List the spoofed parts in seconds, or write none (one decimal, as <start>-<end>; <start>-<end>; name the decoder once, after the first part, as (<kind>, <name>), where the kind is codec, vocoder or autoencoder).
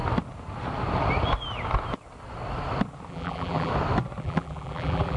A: 3.1-3.7 (vocoder, BigVGAN v2); 4.2-5.2